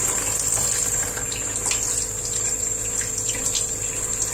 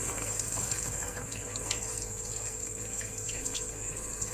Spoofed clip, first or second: second